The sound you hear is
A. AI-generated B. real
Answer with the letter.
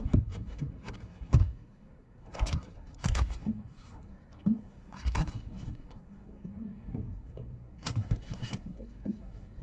A